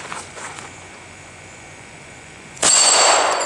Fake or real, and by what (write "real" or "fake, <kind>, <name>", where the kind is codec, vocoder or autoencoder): fake, vocoder, Vocos